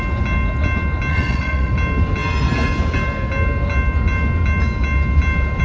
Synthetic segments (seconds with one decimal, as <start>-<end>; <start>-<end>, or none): 1.1-1.7